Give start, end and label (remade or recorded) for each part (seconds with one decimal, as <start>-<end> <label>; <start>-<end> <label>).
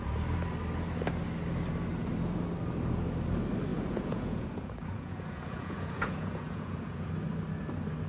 0.0-3.7 recorded; 3.7-7.1 remade; 7.1-8.1 recorded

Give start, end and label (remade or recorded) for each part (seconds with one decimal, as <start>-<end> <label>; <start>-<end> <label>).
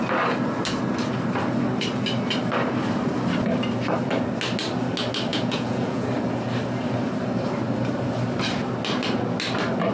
0.0-5.3 recorded; 5.3-6.1 remade; 6.1-9.9 recorded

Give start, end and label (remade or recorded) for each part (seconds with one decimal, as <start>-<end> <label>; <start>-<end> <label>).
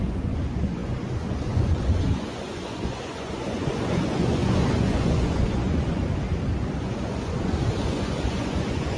0.0-6.0 remade; 6.0-6.8 recorded; 6.8-9.0 remade